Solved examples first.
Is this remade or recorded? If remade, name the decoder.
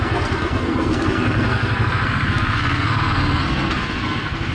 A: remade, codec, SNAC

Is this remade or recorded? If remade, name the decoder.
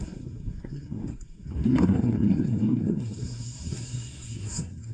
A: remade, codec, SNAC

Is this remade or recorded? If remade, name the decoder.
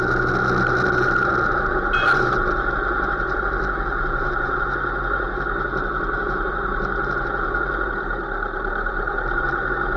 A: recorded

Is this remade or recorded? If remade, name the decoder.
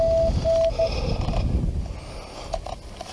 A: recorded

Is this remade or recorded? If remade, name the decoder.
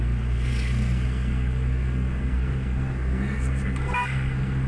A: remade, codec, SNAC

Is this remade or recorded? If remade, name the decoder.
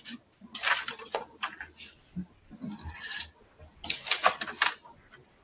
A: recorded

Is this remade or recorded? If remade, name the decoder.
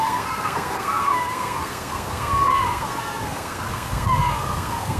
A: remade, codec, SNAC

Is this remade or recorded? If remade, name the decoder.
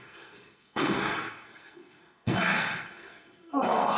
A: remade, codec, SNAC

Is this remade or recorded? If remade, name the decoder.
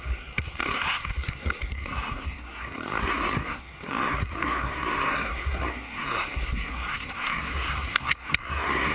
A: remade, codec, SNAC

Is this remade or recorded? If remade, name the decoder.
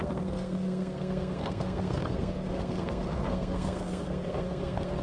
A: remade, codec, SNAC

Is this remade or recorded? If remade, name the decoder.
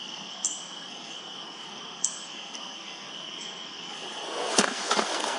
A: remade, codec, SNAC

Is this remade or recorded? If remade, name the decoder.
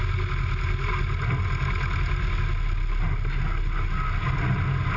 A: recorded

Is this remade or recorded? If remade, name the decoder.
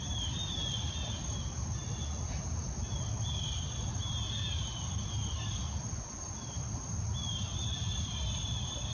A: recorded